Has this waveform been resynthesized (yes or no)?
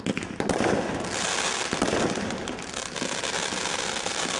no